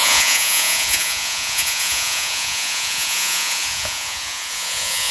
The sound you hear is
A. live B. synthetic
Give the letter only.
B